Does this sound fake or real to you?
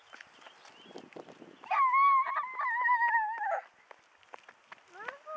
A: real